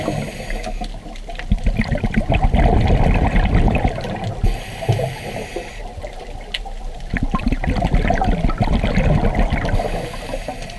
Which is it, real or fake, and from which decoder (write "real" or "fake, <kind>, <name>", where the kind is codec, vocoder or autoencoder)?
real